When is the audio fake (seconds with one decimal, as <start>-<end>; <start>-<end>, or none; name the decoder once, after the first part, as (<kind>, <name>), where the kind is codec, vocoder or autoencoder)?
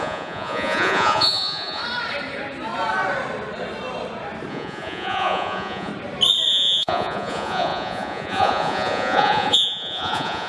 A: 0.0-1.8 (vocoder, Vocos); 4.5-5.9; 6.5-10.5